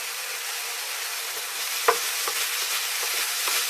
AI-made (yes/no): yes